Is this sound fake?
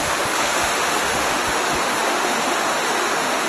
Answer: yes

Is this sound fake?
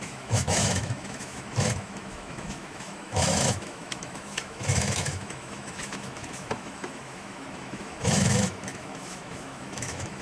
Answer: yes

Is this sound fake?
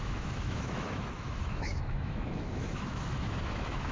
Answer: yes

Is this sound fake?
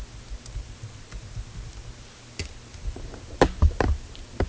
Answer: no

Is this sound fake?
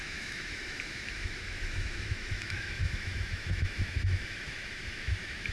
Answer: yes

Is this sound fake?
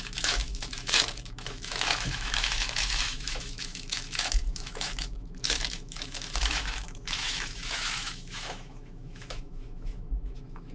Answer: yes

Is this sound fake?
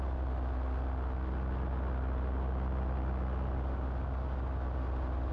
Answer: no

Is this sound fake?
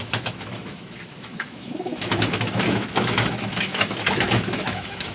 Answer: yes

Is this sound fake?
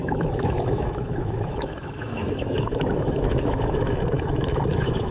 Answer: yes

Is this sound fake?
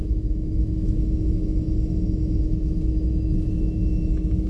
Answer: yes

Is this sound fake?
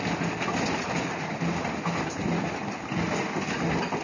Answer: no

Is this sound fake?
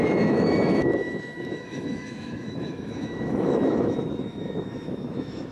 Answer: yes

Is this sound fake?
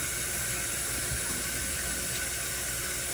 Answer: no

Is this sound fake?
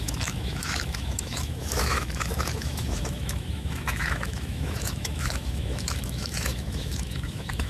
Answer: yes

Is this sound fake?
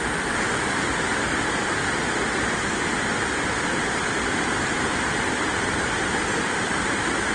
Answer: no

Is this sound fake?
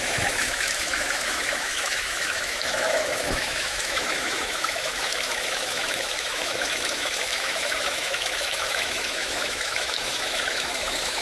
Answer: yes